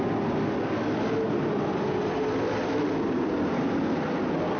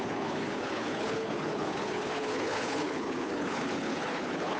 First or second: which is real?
first